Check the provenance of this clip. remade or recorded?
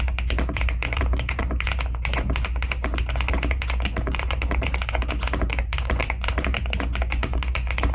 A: remade